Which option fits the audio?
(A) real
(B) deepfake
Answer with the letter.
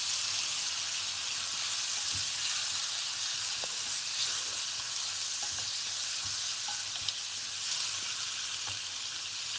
A